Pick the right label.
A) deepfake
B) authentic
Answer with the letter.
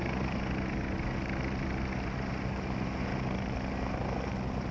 B